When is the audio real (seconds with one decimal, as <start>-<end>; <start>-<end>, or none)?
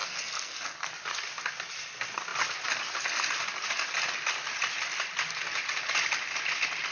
0.9-6.9